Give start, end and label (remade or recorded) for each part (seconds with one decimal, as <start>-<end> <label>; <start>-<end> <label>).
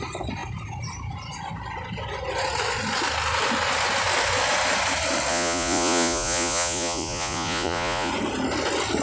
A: 0.0-5.3 recorded; 5.3-8.1 remade; 8.1-9.0 recorded